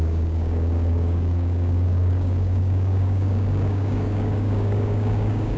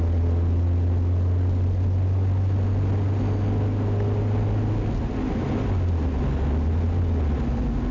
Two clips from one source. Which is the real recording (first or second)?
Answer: second